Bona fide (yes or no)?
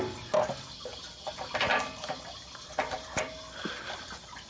yes